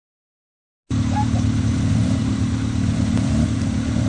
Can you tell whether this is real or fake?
real